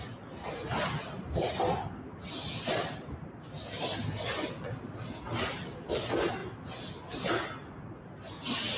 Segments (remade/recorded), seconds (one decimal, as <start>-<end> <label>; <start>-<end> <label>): 0.0-8.8 recorded